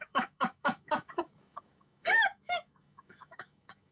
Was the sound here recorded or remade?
remade